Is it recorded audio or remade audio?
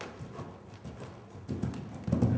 recorded